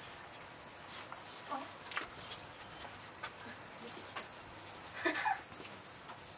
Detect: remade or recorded recorded